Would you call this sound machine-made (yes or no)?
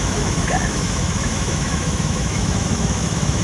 yes